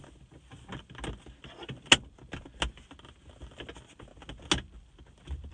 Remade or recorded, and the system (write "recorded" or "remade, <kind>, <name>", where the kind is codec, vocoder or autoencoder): recorded